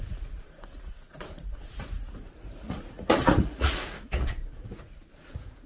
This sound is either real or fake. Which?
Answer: fake